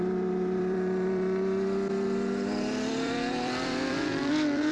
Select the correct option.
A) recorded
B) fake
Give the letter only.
B